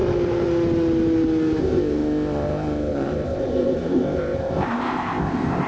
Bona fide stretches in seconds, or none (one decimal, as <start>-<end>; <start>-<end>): 0.0-1.6